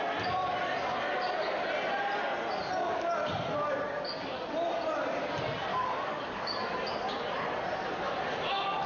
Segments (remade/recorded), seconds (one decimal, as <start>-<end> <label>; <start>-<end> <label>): 0.0-5.7 recorded; 5.7-6.6 remade; 6.6-8.9 recorded